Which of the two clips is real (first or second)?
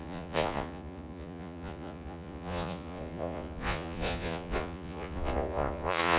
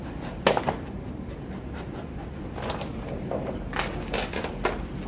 second